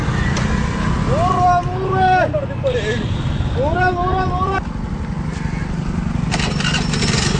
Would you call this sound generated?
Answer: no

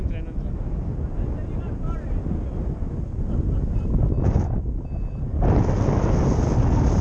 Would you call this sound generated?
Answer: no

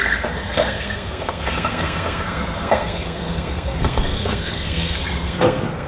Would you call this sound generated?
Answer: yes